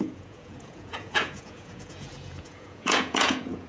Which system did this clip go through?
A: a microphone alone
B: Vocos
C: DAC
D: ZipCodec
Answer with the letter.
B